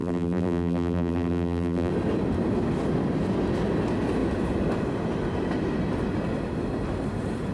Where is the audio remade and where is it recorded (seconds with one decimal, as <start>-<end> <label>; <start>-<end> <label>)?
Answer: 0.0-1.9 remade; 1.9-7.5 recorded